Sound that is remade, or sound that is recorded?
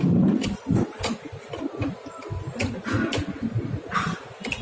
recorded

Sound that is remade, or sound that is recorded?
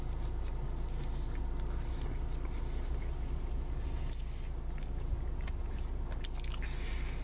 recorded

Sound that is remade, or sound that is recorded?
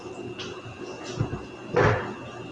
recorded